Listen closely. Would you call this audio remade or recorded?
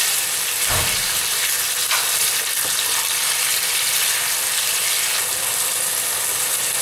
recorded